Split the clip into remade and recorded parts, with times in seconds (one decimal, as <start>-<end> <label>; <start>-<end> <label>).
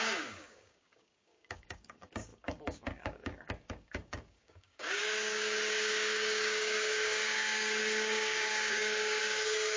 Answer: 0.0-9.8 remade